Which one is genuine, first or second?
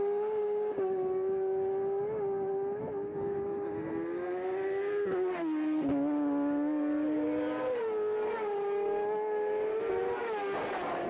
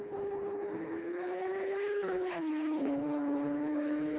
first